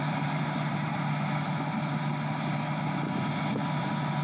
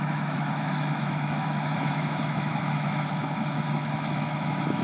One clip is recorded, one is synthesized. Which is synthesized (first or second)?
second